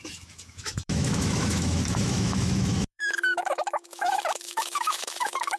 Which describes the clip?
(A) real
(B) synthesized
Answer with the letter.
B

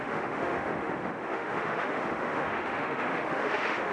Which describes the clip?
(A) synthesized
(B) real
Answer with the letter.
A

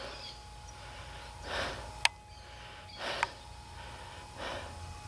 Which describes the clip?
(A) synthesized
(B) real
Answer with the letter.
B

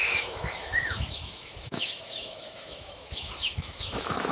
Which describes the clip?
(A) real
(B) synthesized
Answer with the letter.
B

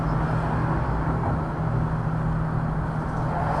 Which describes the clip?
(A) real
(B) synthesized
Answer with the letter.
A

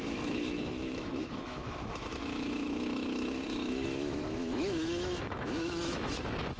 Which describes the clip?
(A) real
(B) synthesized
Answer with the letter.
B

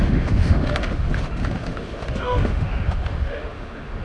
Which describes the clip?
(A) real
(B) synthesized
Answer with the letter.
B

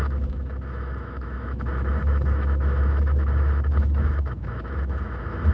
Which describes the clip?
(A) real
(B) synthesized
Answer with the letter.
B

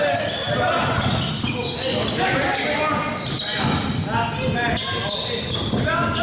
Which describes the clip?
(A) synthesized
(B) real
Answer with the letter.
B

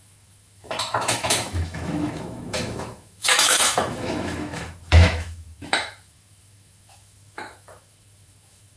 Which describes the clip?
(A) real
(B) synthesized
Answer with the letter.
B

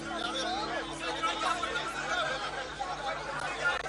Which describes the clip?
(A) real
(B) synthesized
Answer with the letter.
A